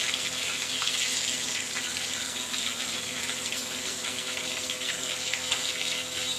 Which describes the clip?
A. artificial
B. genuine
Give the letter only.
A